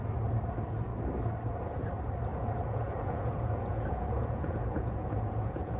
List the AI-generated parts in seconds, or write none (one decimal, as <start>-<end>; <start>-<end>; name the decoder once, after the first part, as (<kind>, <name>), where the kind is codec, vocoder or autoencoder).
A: 2.3-5.8 (vocoder, Vocos)